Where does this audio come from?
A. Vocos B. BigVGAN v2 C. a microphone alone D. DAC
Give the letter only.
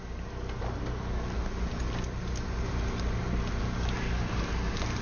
C